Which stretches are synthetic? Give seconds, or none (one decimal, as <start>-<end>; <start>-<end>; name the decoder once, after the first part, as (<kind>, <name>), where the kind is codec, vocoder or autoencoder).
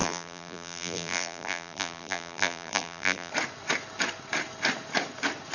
0.0-3.3 (vocoder, BigVGAN v2)